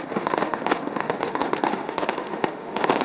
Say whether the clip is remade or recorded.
remade